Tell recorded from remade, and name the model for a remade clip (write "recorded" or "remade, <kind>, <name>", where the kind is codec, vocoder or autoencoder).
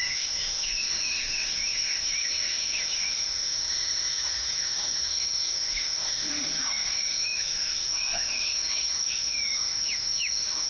remade, autoencoder, DAC-VAE